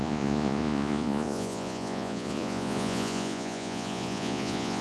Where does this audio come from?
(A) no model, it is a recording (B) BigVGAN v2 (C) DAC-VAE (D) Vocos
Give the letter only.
D